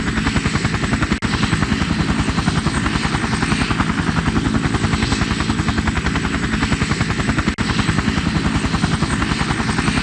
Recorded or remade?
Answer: recorded